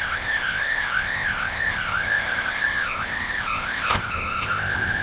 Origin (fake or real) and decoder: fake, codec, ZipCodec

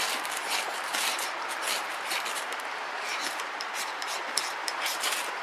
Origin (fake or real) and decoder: fake, vocoder, BigVGAN v2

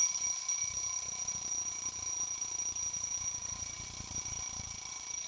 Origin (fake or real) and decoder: real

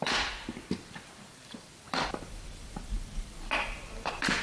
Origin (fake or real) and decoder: fake, vocoder, BigVGAN v2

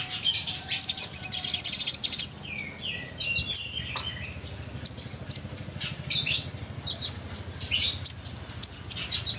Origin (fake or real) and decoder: real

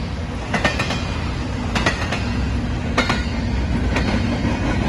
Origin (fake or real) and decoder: real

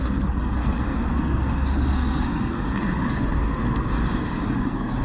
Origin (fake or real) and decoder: fake, codec, SNAC